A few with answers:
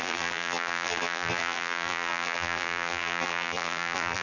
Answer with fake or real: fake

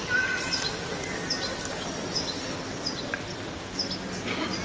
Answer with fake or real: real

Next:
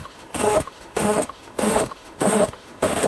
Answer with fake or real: fake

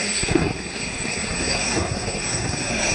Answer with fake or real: fake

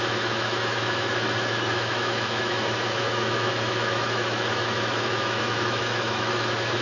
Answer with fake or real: fake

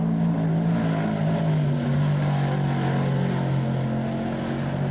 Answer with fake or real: real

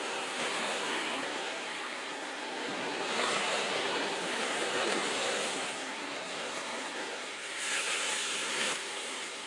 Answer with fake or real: fake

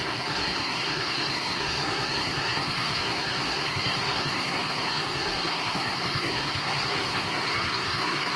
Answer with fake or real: fake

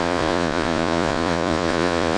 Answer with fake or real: fake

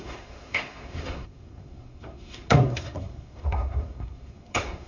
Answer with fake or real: fake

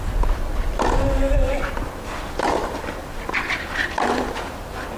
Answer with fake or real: real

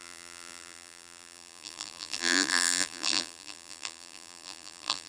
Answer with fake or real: fake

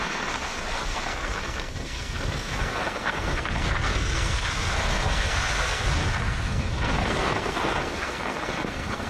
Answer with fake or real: fake